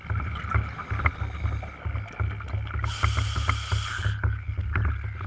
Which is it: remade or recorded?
recorded